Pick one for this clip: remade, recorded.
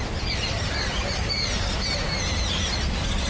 recorded